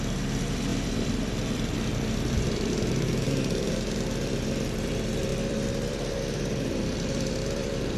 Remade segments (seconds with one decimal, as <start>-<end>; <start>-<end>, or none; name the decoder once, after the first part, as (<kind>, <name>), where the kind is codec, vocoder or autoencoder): 0.0-8.0 (vocoder, BigVGAN v2)